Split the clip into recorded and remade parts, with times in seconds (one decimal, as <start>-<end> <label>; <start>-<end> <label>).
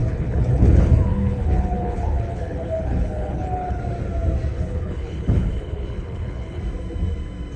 0.0-3.8 remade; 3.8-4.5 recorded; 4.5-6.6 remade; 6.6-7.6 recorded